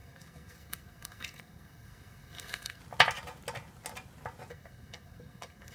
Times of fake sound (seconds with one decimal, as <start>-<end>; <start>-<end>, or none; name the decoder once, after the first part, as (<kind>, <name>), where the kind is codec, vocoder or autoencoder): 0.0-2.8 (codec, SNAC); 4.5-5.7